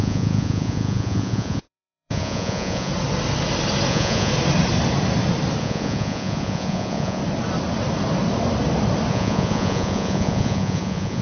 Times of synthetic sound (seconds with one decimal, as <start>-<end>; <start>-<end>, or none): 0.0-2.9; 3.9-4.3; 5.6-7.2; 9.1-11.2